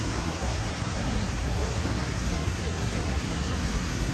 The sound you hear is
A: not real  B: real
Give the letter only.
A